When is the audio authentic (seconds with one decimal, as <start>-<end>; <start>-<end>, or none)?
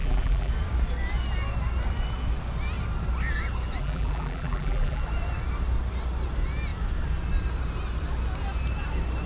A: 0.5-3.8; 5.0-9.3